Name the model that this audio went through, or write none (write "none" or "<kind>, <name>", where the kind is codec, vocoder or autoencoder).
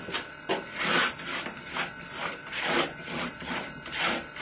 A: none